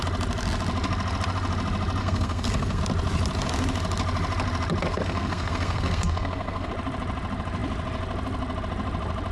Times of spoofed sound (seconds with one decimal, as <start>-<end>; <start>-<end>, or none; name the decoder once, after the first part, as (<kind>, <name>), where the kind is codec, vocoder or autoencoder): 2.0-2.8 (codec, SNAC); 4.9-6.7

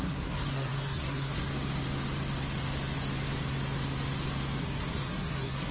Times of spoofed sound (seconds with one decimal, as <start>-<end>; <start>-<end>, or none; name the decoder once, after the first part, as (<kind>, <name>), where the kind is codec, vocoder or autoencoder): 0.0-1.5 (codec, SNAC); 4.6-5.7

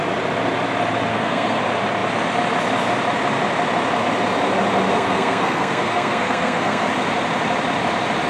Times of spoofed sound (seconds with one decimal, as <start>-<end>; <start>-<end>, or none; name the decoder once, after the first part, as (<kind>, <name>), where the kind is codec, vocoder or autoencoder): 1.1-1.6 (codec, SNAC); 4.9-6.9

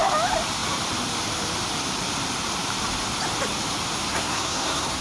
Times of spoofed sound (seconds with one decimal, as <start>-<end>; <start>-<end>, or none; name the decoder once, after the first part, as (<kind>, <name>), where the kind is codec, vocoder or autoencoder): 4.1-5.0 (codec, SNAC)

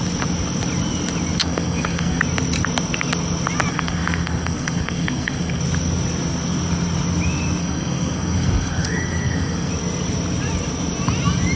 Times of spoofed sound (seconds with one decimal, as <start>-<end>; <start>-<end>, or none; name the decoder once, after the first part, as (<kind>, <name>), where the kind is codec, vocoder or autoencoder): 1.4-2.2 (codec, SNAC); 3.7-5.6; 7.6-9.7

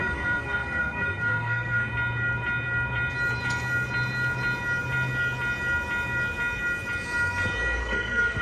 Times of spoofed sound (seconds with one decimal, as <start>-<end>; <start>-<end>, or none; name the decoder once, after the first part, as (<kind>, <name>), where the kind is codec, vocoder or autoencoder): 0.0-1.9 (codec, SNAC); 7.8-8.4

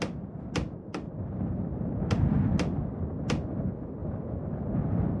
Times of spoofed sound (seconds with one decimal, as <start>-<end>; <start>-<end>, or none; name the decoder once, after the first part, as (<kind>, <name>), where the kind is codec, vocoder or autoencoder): none